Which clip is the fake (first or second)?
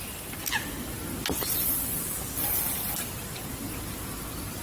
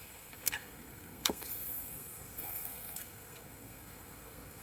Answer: second